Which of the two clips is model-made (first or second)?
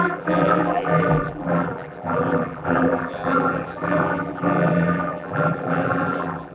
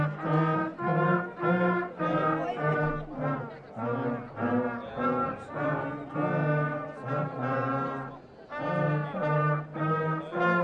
first